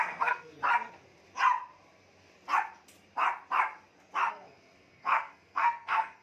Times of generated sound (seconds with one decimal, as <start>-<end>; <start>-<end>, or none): 0.0-0.6; 4.3-6.2